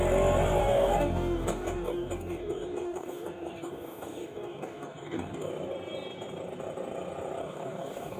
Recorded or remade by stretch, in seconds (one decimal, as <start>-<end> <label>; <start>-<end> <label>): 0.0-0.6 recorded; 0.6-5.5 remade; 5.5-7.4 recorded; 7.4-8.2 remade